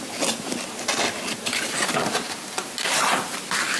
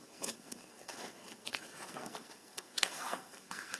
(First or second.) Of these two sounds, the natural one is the first